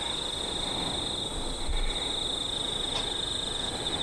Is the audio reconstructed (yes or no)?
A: no